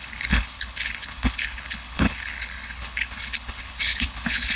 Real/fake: fake